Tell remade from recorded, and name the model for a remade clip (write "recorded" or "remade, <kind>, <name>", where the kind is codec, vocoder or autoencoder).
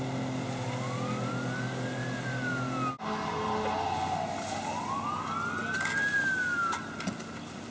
recorded